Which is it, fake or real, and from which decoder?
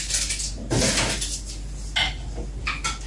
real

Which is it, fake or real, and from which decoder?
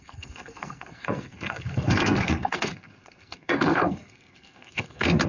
fake, codec, SNAC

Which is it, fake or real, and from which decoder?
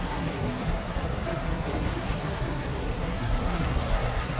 fake, codec, SNAC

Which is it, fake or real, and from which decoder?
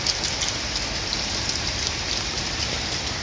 real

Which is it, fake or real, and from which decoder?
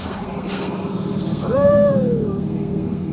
fake, codec, SNAC